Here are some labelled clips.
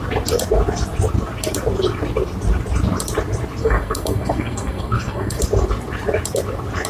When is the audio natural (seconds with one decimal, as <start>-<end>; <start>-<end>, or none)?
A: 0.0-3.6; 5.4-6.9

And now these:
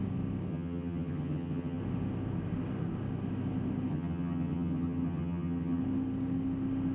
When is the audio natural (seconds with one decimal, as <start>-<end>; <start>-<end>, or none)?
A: 0.0-0.5; 1.8-3.9; 5.8-6.9

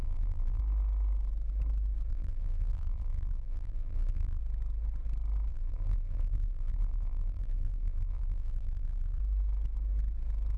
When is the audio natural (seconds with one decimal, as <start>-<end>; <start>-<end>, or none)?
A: 0.6-2.1; 4.4-5.5; 9.2-10.6

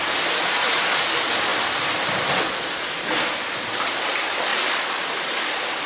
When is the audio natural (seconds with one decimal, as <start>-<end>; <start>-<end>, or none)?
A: 0.0-5.9

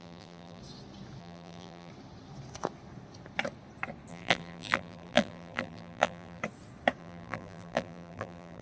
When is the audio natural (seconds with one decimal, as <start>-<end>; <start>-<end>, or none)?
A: 0.6-1.2; 1.9-4.1; 6.4-7.0

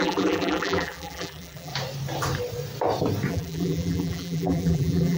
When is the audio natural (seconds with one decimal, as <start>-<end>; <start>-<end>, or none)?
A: 1.7-3.3

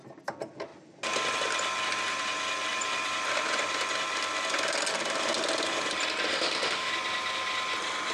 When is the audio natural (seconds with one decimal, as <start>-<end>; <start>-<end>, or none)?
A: 0.0-6.3; 6.9-8.1

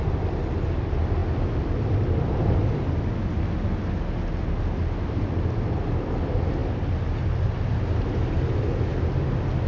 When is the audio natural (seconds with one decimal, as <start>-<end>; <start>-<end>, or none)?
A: 0.0-9.7